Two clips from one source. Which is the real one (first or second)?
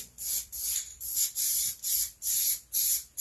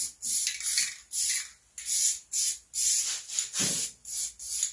second